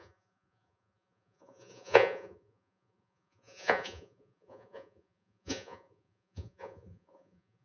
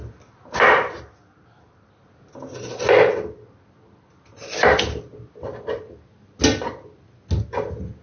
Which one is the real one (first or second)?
second